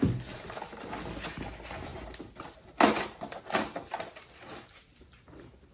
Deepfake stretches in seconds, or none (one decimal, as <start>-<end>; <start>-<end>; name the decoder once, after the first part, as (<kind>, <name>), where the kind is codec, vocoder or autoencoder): none